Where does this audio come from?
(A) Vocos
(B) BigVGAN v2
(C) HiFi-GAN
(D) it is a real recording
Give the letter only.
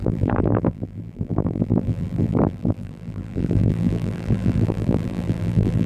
B